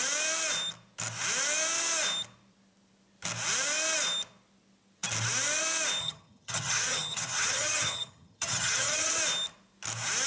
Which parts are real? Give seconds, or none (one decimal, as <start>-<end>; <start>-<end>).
0.0-6.0; 9.2-10.3